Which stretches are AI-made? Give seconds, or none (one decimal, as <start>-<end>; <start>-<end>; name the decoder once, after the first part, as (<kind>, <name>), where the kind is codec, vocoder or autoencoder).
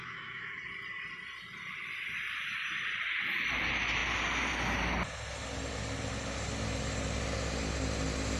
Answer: 0.0-0.6 (autoencoder, DAC-VAE)